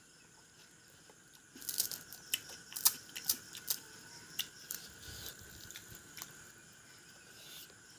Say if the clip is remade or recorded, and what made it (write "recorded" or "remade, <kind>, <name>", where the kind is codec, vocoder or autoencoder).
recorded